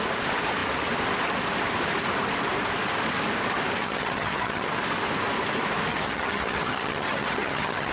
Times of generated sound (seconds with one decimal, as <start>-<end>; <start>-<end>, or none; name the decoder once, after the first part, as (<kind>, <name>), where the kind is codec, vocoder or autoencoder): 3.8-4.7 (vocoder, HiFi-GAN); 5.9-7.9